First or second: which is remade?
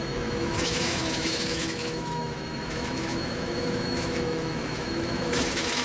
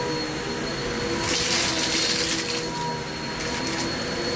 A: first